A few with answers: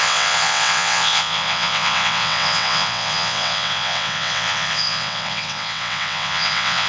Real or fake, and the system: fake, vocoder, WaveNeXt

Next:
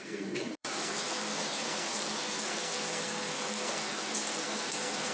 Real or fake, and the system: fake, codec, SNAC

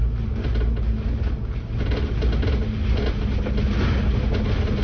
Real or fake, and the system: real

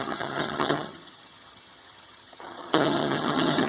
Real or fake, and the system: fake, vocoder, HiFi-GAN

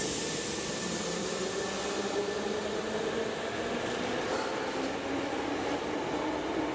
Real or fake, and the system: real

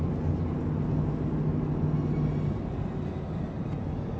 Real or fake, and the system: real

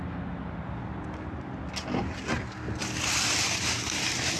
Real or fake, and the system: real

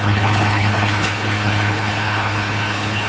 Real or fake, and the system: fake, codec, HILCodec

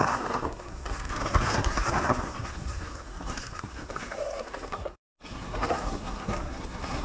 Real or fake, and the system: fake, codec, SNAC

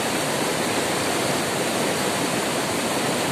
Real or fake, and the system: real